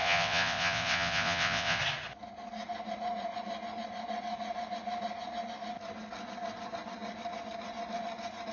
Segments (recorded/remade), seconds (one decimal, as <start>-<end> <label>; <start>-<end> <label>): 0.0-1.8 remade; 1.8-8.5 recorded